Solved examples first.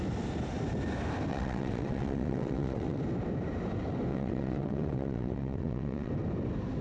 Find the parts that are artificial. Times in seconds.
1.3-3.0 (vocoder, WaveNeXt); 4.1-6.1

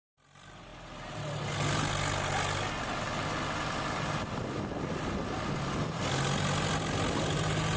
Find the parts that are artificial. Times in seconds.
none

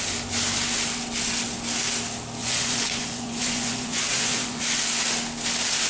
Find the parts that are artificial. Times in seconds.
2.4-4.6 (vocoder, Vocos)